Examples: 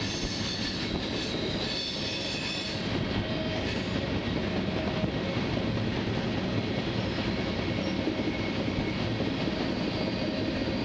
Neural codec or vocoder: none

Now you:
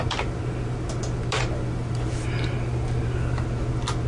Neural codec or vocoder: none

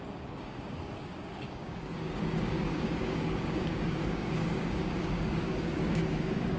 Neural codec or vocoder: codec, DAC